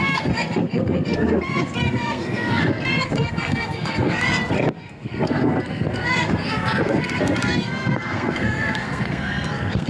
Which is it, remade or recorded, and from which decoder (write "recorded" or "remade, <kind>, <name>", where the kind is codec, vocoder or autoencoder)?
remade, codec, SNAC